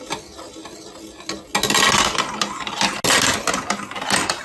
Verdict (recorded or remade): recorded